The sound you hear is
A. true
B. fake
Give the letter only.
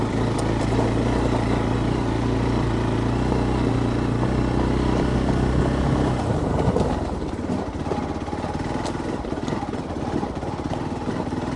A